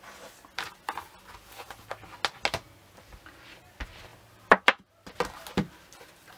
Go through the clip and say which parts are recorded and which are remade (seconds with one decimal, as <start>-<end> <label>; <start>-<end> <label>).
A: 0.0-4.1 recorded; 4.1-4.9 remade; 4.9-6.4 recorded